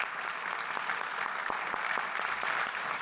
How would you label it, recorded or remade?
recorded